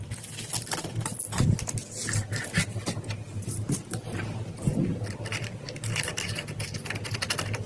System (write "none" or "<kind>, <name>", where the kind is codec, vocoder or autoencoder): none